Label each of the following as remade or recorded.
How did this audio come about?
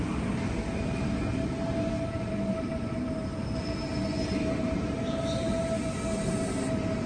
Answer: recorded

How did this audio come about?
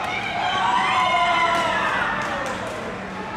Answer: recorded